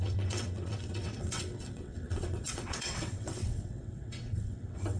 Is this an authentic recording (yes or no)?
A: no